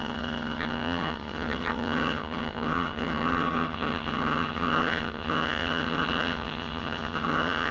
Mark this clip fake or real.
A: fake